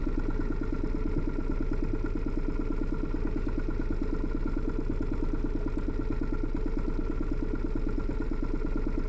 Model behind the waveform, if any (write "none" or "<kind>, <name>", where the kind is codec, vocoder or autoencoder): none